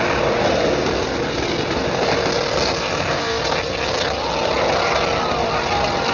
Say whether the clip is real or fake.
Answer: real